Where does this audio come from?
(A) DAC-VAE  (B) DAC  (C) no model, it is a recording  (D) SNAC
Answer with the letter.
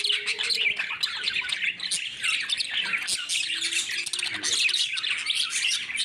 C